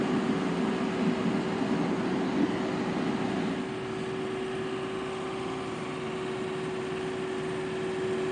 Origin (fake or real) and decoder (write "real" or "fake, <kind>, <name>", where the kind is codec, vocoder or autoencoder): real